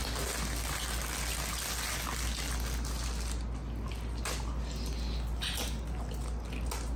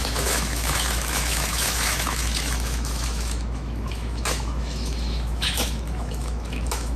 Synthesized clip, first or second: second